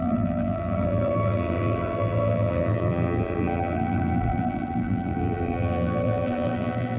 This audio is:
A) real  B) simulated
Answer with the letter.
B